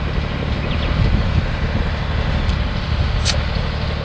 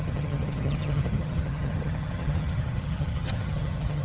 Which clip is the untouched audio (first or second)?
first